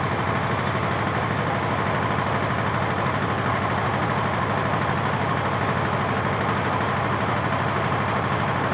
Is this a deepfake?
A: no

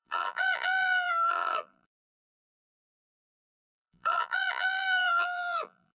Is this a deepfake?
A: yes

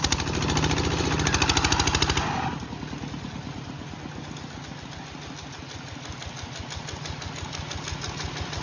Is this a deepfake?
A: no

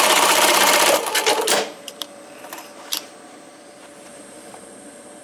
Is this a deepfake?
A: yes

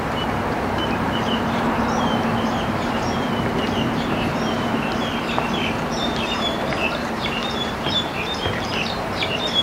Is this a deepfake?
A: yes